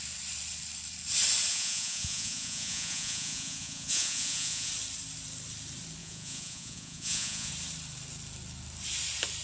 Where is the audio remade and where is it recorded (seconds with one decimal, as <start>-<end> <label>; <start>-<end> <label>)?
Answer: 0.0-1.5 recorded; 1.5-4.7 remade; 4.7-6.0 recorded; 6.0-7.5 remade; 7.5-9.4 recorded